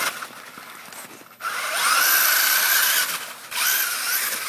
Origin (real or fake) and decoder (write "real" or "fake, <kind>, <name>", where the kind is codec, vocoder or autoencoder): real